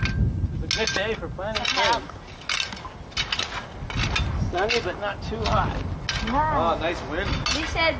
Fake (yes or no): no